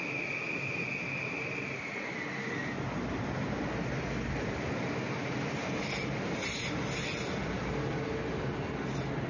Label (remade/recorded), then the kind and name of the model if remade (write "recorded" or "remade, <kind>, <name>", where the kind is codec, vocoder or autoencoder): recorded